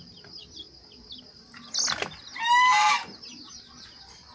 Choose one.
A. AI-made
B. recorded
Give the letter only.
B